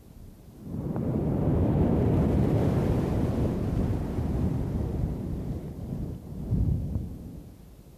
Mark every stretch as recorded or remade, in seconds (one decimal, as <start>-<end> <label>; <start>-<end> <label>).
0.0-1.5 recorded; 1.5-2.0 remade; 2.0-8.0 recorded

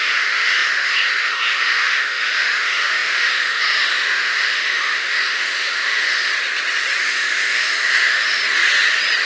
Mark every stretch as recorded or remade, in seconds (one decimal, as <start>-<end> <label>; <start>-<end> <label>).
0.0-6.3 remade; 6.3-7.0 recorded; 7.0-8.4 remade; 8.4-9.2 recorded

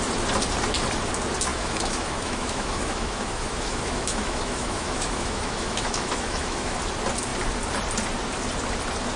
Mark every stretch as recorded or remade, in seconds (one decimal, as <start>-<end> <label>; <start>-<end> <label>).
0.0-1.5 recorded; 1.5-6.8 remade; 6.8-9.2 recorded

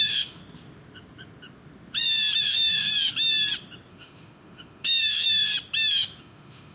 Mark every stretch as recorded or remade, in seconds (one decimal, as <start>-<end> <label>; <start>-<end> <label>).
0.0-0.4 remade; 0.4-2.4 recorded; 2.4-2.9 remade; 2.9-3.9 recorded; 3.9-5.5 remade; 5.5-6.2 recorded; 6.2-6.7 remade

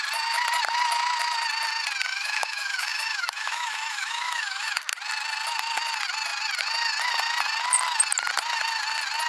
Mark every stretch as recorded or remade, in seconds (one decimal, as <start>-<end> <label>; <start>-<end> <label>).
0.0-2.1 recorded; 2.1-4.8 remade; 4.8-9.3 recorded